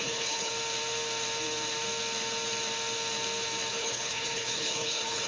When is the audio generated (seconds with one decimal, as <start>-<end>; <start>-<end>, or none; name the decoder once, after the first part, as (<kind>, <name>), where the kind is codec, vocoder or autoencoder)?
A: 0.0-0.5 (codec, HILCodec); 3.7-5.3